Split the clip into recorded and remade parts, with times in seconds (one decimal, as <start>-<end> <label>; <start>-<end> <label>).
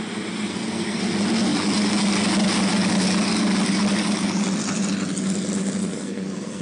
0.0-0.5 recorded; 0.5-1.0 remade; 1.0-5.8 recorded; 5.8-6.6 remade